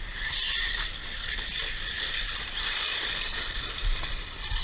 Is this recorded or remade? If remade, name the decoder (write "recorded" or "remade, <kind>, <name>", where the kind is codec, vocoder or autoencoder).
recorded